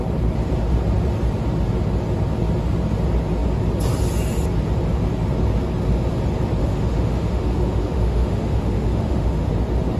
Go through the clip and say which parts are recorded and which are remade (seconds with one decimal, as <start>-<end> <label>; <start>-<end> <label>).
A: 0.0-6.6 recorded; 6.6-9.5 remade; 9.5-10.0 recorded